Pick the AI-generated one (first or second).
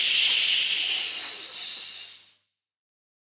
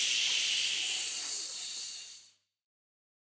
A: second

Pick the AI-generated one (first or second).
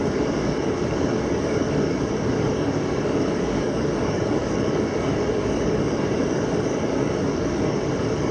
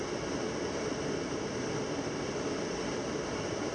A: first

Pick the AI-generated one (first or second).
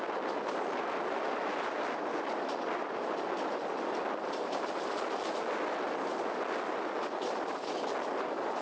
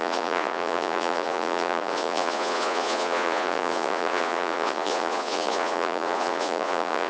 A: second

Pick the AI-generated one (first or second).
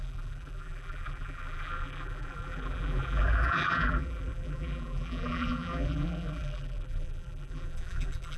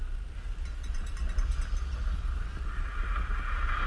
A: first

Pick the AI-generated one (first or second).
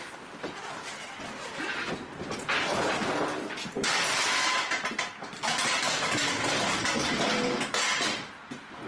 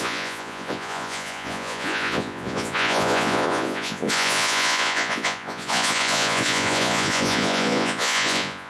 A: second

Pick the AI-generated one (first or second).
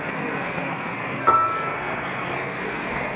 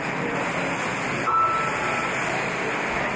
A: first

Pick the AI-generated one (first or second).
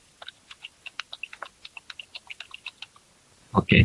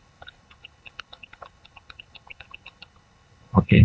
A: second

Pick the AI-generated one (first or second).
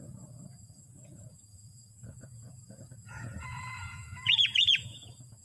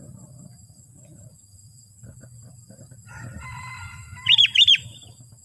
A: first